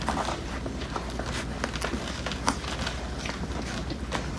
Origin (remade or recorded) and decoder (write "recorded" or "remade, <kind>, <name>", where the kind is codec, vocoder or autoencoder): recorded